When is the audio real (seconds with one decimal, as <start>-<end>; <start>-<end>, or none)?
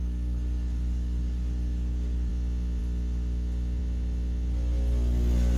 2.3-5.6